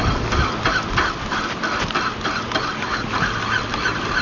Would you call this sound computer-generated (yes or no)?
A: no